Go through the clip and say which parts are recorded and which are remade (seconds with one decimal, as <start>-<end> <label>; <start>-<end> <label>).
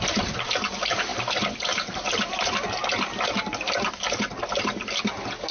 0.0-5.5 recorded